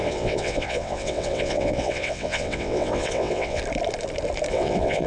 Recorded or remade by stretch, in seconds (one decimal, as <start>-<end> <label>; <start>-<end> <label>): 0.0-3.6 remade; 3.6-4.5 recorded; 4.5-5.1 remade